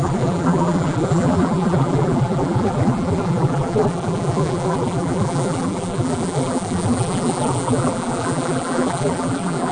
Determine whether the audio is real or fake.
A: fake